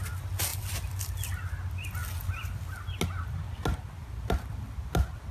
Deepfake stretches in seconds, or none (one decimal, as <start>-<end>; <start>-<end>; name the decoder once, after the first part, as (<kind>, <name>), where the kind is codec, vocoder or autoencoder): none